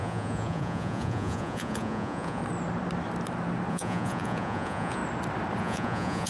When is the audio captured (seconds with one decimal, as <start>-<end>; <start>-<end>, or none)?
2.4-3.7; 5.0-5.6